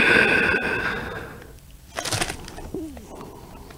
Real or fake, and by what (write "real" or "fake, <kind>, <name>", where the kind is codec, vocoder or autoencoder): real